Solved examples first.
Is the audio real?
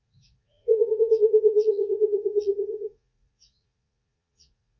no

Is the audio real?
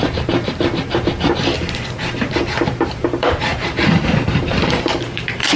no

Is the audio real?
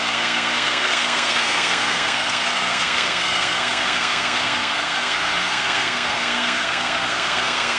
no